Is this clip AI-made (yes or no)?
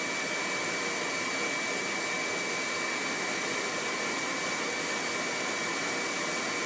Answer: no